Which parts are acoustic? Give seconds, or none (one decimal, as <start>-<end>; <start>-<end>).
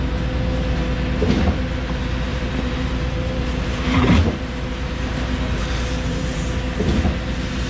0.0-2.3; 6.4-7.7